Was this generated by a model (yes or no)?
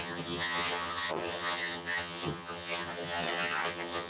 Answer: yes